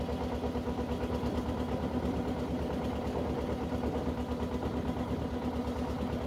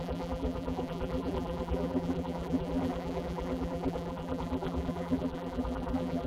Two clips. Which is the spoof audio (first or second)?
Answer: second